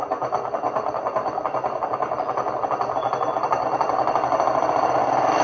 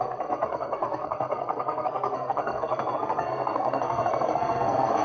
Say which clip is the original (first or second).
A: first